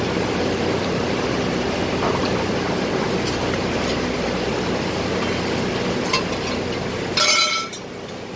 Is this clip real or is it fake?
real